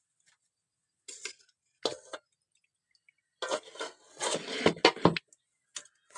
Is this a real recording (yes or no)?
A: yes